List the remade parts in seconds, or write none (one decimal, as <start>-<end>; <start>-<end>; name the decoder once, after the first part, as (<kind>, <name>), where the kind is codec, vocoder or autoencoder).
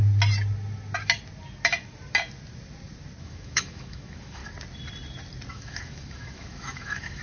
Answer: 3.2-4.4 (autoencoder, DAC-VAE); 5.5-7.2